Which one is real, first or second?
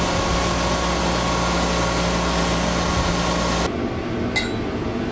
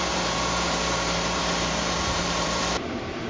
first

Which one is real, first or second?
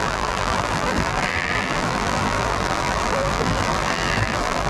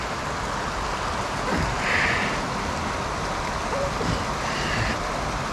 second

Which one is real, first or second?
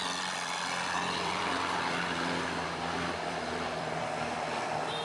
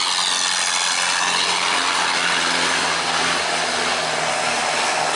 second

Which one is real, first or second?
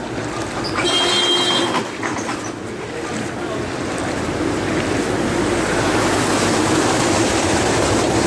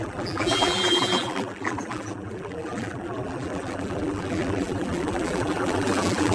first